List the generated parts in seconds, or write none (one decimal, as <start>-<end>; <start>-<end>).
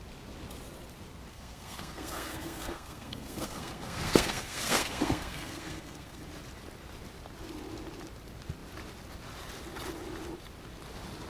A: 1.3-6.2